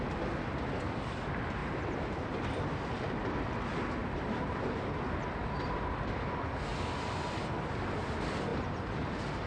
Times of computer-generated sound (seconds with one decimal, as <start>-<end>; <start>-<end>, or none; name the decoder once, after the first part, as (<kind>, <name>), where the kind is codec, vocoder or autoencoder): 1.6-2.4 (vocoder, BigVGAN v2); 4.0-4.8; 5.4-6.2